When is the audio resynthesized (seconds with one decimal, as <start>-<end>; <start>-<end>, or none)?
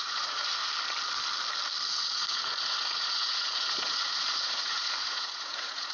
0.0-0.6; 1.9-5.9